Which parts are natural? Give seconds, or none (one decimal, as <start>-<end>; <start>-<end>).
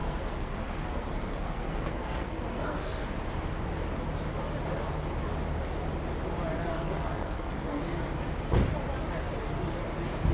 3.1-6.7; 7.8-10.3